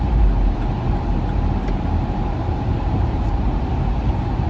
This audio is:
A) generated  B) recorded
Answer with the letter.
B